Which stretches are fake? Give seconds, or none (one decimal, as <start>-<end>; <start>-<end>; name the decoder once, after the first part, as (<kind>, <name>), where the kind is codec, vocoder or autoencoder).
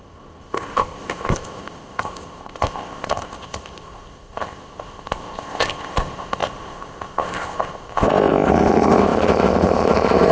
0.0-10.3 (codec, ZipCodec)